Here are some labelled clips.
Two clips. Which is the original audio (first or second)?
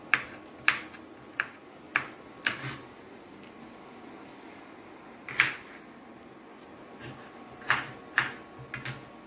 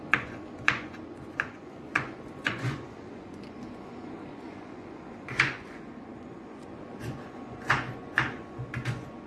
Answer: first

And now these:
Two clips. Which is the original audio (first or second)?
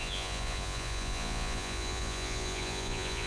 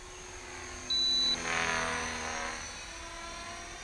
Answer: second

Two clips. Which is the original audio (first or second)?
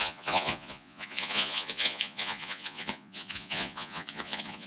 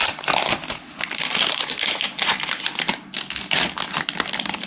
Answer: second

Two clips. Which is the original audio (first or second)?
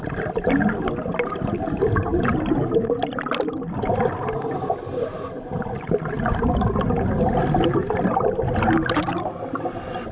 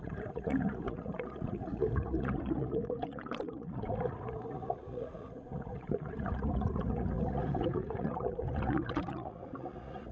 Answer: first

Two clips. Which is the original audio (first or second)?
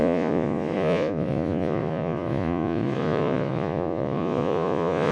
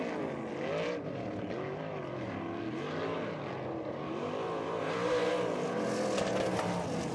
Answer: second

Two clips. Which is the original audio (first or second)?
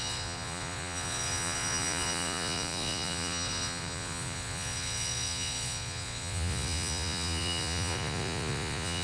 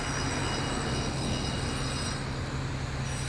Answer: second